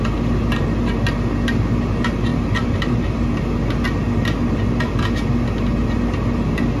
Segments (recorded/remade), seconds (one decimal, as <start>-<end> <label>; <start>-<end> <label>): 0.0-2.3 recorded; 2.3-3.4 remade; 3.4-6.8 recorded